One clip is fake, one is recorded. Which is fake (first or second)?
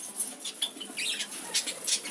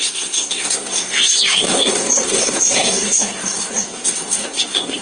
second